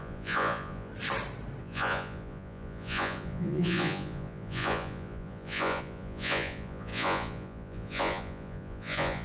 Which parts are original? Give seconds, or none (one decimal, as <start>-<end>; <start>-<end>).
0.9-1.6